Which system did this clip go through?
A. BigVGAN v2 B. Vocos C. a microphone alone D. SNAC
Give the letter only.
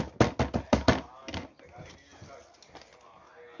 C